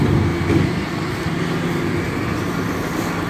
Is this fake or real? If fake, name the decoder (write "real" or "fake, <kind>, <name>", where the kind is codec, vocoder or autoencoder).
real